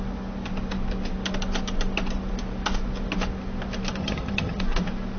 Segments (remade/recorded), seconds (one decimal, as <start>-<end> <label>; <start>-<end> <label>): 0.0-4.0 recorded; 4.0-4.6 remade; 4.6-5.2 recorded